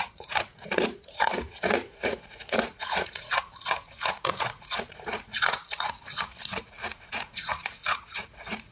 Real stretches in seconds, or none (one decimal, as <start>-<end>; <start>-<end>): none